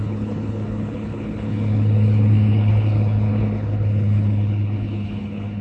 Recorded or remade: remade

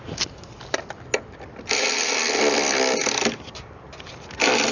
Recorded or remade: recorded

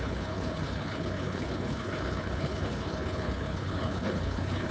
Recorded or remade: remade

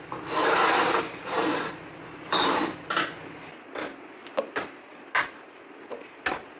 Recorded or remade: recorded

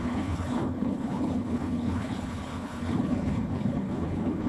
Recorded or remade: remade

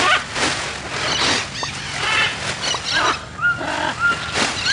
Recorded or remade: recorded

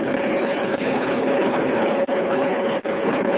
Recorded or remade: remade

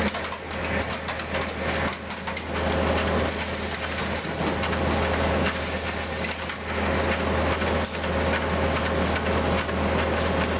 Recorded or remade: recorded